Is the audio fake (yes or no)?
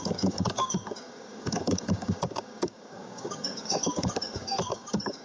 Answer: yes